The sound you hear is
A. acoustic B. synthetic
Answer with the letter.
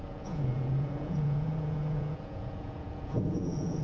B